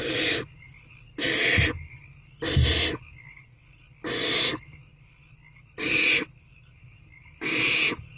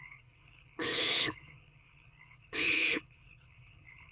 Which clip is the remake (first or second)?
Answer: second